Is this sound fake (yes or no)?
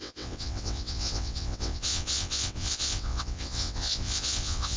yes